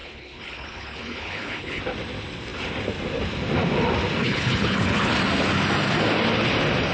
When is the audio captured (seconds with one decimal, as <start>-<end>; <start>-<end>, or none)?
1.8-4.2; 5.1-6.9